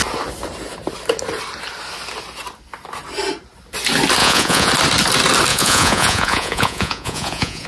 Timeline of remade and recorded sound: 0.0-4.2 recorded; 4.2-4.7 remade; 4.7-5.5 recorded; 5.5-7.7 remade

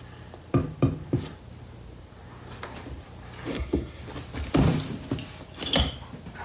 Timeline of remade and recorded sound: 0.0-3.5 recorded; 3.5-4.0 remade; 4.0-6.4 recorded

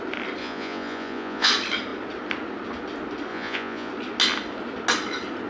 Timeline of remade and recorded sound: 0.0-0.4 recorded; 0.4-1.5 remade; 1.5-3.3 recorded; 3.3-3.9 remade; 3.9-5.5 recorded

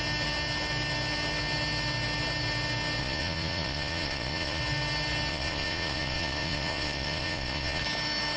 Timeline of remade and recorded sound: 0.0-3.0 recorded; 3.0-4.6 remade; 4.6-5.3 recorded; 5.3-7.8 remade; 7.8-8.4 recorded

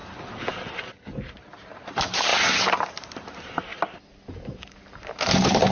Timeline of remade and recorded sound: 0.0-1.1 recorded; 1.1-2.3 remade; 2.3-2.9 recorded; 2.9-3.7 remade; 3.7-4.3 recorded; 4.3-5.7 remade

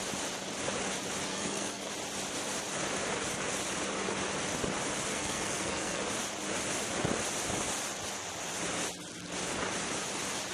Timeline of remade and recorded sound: 0.0-1.3 recorded; 1.3-1.9 remade; 1.9-5.1 recorded; 5.1-6.0 remade; 6.0-10.5 recorded

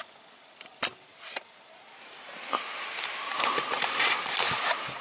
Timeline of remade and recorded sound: 0.0-1.1 recorded; 1.1-4.1 remade; 4.1-5.0 recorded